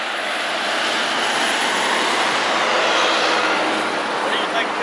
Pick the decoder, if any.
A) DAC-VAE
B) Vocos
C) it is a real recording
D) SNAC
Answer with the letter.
C